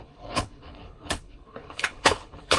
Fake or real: fake